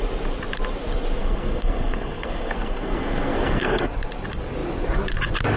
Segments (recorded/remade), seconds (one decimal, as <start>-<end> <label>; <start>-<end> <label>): 0.0-1.2 recorded; 1.2-3.9 remade; 3.9-5.6 recorded